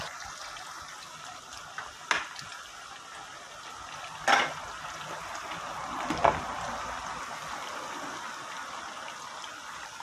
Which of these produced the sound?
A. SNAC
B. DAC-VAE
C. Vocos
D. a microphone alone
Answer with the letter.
D